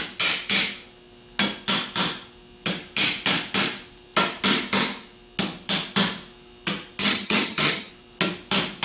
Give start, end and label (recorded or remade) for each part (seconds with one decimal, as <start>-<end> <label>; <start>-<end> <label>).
0.0-7.0 recorded; 7.0-7.9 remade; 7.9-8.8 recorded